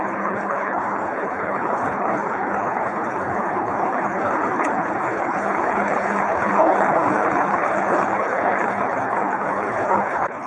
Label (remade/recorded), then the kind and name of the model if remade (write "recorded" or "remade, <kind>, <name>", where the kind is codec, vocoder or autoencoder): remade, codec, HILCodec